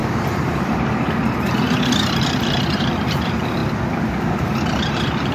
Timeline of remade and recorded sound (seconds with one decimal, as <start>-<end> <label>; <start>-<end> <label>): 0.0-3.6 remade; 3.6-4.2 recorded; 4.2-5.3 remade